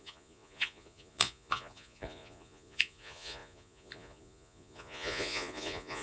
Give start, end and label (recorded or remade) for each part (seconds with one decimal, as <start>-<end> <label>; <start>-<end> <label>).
0.0-6.0 remade